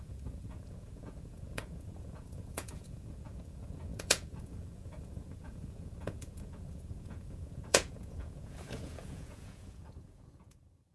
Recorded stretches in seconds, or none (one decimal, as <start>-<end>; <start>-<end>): none